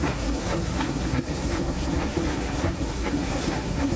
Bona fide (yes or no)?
no